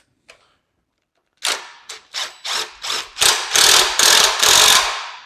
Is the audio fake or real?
real